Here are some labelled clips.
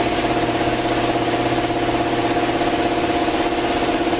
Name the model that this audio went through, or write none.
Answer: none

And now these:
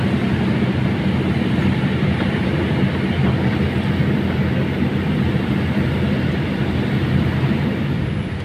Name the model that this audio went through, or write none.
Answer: none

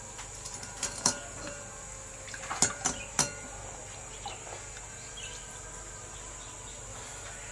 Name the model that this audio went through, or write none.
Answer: none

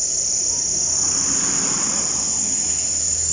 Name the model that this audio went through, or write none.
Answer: none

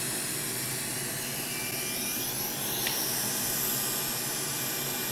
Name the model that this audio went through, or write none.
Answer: none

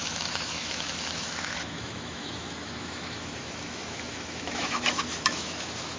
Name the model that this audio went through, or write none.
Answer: autoencoder, DAC-VAE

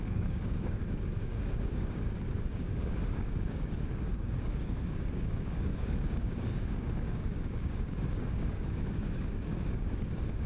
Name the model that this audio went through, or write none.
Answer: codec, DAC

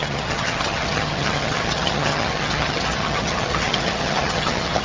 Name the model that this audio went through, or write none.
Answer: vocoder, HiFi-GAN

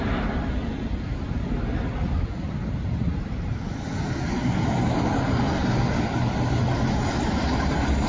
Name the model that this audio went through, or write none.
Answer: none